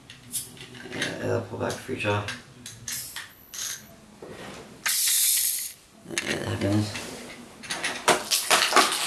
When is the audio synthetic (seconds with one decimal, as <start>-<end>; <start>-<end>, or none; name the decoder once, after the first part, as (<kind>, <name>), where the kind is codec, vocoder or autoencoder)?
3.3-3.9 (codec, HILCodec)